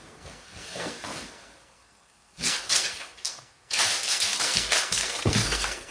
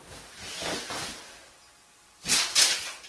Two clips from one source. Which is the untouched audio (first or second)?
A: second